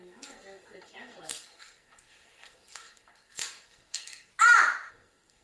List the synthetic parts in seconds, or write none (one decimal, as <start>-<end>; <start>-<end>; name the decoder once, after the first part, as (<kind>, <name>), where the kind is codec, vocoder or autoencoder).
0.0-4.3 (codec, SNAC); 4.9-5.4

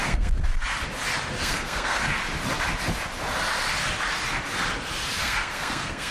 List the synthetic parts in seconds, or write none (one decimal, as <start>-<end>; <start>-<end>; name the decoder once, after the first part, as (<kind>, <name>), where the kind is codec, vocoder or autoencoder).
0.0-0.5 (codec, SNAC); 1.4-2.0; 5.2-6.1

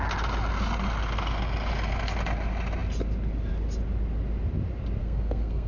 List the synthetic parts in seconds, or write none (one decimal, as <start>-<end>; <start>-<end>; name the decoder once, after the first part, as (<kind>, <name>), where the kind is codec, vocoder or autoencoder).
5.0-5.7 (codec, SNAC)

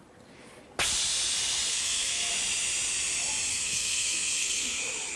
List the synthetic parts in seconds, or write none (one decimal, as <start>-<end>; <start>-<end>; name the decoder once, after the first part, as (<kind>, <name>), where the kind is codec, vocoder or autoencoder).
1.7-2.3 (codec, SNAC); 3.5-4.8

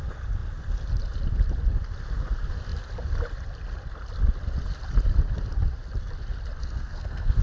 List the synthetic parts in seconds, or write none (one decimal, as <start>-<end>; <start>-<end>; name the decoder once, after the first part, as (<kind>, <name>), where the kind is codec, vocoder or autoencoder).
6.6-7.4 (codec, SNAC)

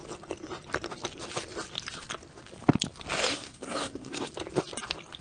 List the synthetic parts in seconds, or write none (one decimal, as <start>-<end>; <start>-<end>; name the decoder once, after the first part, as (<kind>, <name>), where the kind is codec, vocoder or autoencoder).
3.3-4.3 (codec, SNAC)